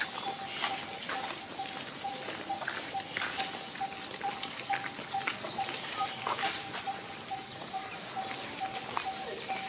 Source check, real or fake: real